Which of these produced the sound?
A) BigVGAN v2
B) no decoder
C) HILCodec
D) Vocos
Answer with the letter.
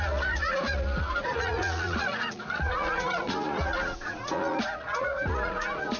D